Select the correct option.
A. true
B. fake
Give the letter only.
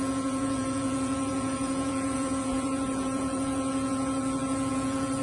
B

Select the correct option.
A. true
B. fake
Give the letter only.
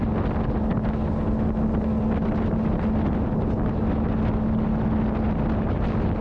A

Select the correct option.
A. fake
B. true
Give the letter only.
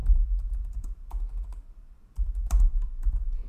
A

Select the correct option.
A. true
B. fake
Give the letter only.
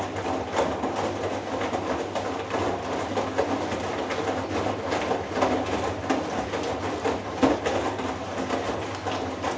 A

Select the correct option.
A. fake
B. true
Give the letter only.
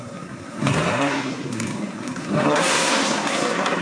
A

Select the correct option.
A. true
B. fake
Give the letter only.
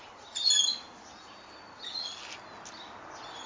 A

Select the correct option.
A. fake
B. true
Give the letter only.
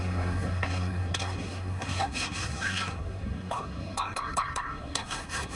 A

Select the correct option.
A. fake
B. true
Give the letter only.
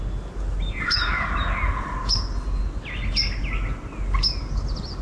B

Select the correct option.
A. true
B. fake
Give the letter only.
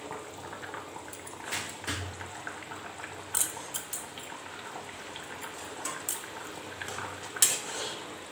A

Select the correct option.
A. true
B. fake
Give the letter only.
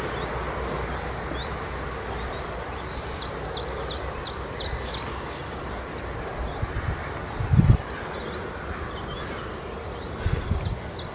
A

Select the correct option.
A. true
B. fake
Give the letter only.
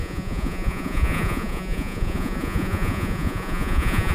B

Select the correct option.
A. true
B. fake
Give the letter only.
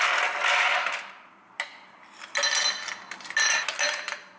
A